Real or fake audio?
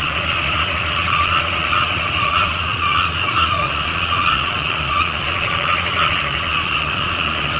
fake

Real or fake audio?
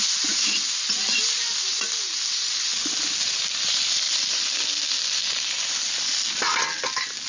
real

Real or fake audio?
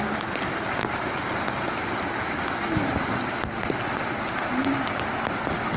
real